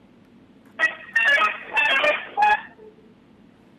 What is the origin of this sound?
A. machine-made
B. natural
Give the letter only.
B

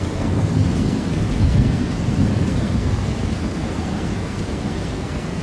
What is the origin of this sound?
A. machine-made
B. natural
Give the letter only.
A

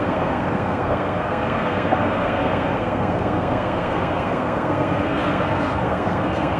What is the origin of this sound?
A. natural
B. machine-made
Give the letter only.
B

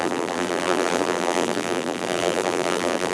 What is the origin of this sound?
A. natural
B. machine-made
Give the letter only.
B